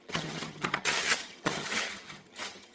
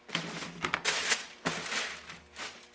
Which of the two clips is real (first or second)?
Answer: second